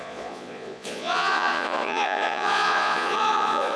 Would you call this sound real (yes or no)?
no